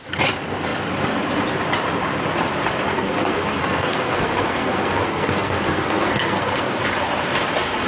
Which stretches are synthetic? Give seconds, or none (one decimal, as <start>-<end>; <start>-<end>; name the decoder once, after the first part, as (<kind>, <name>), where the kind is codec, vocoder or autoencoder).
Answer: 2.9-6.8 (codec, SNAC)

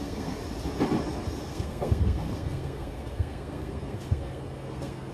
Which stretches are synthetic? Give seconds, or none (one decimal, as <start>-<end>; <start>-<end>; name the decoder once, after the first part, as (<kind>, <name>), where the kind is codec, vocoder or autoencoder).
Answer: 0.0-0.4 (codec, SNAC); 1.4-5.1

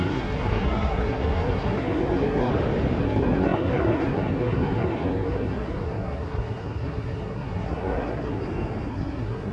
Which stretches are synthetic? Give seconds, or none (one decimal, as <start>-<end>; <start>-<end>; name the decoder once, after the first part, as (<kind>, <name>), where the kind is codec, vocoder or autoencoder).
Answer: 0.0-2.5 (codec, SNAC); 3.0-8.4; 8.9-9.5

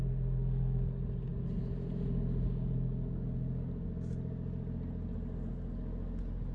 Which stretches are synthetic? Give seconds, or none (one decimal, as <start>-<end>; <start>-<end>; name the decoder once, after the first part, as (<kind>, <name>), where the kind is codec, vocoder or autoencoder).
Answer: none

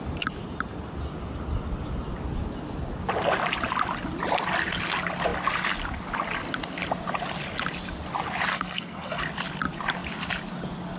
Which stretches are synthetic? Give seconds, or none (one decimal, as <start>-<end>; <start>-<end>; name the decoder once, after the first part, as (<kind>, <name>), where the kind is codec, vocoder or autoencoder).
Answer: 8.5-9.2 (codec, SNAC)